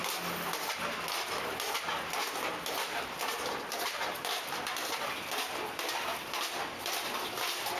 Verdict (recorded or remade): recorded